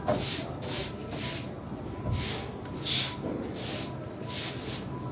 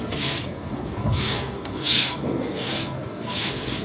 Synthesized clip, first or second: second